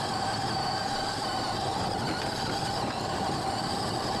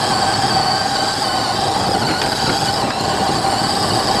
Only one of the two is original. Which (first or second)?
second